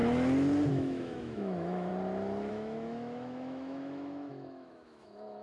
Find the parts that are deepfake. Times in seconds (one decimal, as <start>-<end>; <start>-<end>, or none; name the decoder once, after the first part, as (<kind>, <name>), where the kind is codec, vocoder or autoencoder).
0.7-1.9 (autoencoder, DAC-VAE); 2.5-5.4

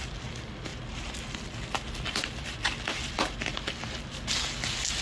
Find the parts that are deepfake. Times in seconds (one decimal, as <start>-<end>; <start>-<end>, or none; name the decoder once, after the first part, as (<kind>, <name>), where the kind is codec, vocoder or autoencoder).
none